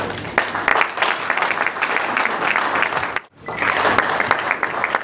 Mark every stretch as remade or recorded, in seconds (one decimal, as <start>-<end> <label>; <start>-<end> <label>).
0.0-5.0 recorded